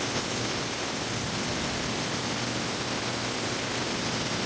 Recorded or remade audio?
recorded